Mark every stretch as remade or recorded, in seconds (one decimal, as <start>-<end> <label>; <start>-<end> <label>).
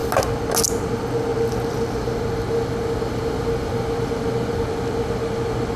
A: 0.0-5.8 recorded